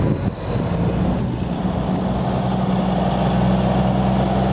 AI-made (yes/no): no